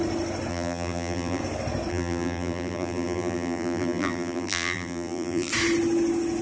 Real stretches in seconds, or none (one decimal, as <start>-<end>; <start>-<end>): 0.0-0.5; 1.4-1.9; 5.5-6.4